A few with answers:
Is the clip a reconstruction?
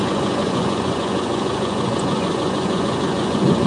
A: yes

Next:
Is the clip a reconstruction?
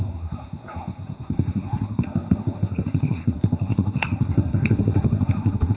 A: yes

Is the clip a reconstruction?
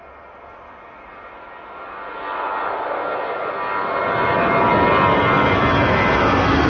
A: yes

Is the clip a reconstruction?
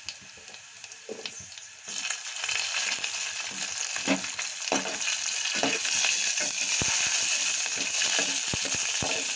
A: no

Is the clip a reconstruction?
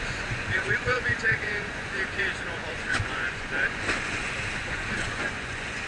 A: yes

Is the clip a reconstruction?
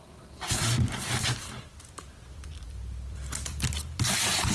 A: yes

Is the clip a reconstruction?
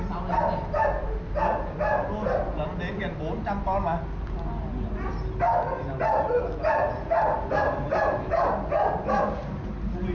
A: no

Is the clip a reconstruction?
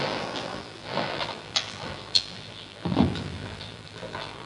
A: yes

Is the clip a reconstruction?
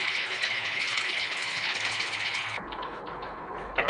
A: yes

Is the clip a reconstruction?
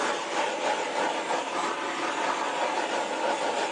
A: no